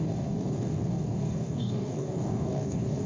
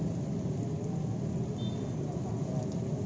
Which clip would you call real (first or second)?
second